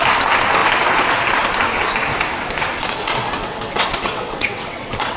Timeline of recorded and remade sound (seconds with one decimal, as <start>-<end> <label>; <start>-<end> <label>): 0.0-3.4 recorded; 3.4-5.2 remade